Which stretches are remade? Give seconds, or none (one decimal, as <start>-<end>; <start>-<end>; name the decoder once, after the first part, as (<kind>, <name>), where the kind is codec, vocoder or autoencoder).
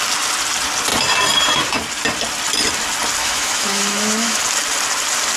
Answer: 3.2-4.4 (autoencoder, DAC-VAE)